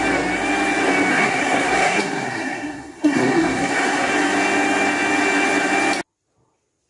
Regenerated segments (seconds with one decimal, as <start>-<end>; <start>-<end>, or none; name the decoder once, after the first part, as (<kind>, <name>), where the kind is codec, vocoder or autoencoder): 1.1-4.1 (codec, SNAC)